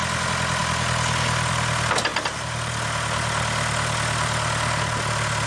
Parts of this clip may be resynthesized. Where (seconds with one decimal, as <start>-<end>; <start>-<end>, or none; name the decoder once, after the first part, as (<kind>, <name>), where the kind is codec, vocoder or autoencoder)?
none

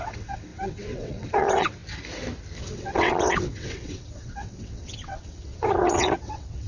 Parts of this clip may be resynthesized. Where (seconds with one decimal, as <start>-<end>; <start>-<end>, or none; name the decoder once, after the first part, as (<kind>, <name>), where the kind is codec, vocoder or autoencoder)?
0.0-1.8 (vocoder, WaveNeXt); 2.6-6.7

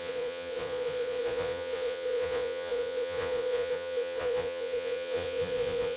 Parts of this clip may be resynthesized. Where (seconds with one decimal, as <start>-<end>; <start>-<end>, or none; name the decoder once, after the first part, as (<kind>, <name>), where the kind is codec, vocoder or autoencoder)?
0.0-6.0 (vocoder, Vocos)

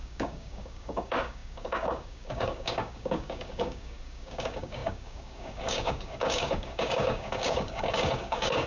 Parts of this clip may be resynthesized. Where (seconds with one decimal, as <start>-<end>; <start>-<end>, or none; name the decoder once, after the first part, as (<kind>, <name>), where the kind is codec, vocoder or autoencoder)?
0.0-8.7 (codec, DAC)

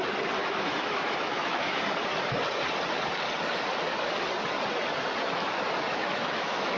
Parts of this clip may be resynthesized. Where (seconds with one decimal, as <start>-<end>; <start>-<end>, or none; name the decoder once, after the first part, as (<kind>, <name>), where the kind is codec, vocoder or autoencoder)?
0.4-1.8 (autoencoder, DAC-VAE); 5.9-6.8

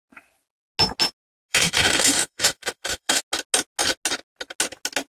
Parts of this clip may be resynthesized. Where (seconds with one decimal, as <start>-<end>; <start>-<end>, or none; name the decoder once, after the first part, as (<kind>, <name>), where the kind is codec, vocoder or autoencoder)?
1.5-3.2 (autoencoder, DAC-VAE)

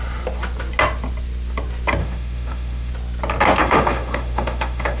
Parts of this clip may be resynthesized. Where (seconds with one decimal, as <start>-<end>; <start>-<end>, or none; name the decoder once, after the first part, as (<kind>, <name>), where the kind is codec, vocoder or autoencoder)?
2.0-2.9 (autoencoder, DAC-VAE); 3.6-5.0

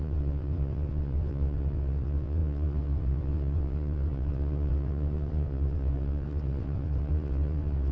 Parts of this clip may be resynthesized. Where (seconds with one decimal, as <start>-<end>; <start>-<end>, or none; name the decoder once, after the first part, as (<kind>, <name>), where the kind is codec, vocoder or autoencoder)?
0.0-7.9 (vocoder, WaveNeXt)